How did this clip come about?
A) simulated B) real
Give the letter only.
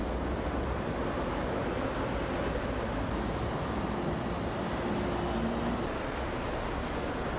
B